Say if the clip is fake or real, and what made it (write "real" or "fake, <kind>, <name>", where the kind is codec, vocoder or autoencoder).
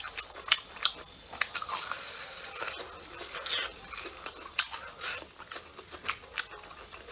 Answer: real